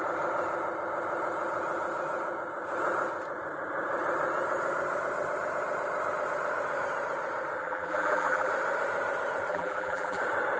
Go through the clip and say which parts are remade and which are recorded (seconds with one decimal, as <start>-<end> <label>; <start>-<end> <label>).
0.0-7.6 recorded; 7.6-8.5 remade; 8.5-9.5 recorded; 9.5-10.2 remade; 10.2-10.6 recorded